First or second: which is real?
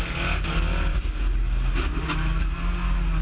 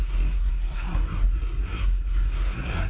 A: first